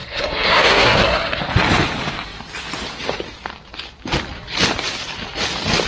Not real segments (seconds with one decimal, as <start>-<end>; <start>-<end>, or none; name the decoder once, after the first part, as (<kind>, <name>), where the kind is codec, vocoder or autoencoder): 0.0-1.4 (codec, SNAC)